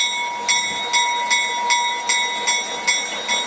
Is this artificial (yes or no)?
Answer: no